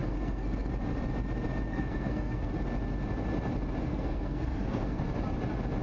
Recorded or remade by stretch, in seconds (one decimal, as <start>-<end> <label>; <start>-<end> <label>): 0.0-0.7 remade; 0.7-1.7 recorded; 1.7-2.5 remade; 2.5-3.9 recorded; 3.9-5.0 remade; 5.0-5.8 recorded

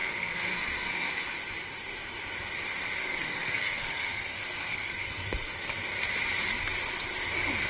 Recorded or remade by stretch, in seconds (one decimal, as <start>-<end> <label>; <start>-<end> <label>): 0.0-1.1 remade; 1.1-3.0 recorded; 3.0-5.5 remade; 5.5-7.7 recorded

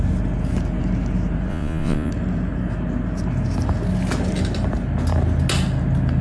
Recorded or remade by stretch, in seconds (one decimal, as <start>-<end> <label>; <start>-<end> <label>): 0.0-1.5 recorded; 1.5-2.1 remade; 2.1-6.2 recorded